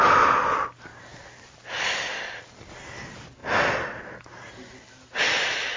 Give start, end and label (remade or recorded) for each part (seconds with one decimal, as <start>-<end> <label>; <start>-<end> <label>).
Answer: 0.0-5.8 recorded